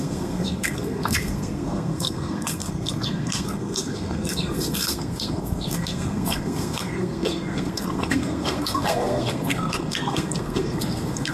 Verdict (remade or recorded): remade